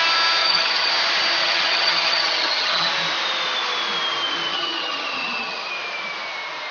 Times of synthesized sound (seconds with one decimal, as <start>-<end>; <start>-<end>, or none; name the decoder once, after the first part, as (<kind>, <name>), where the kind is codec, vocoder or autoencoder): 0.4-0.9 (vocoder, HiFi-GAN); 1.4-2.9; 4.5-5.7